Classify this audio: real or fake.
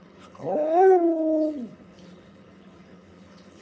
fake